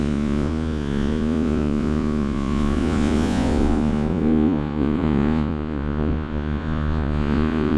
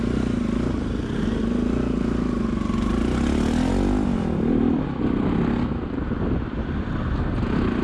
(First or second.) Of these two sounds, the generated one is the first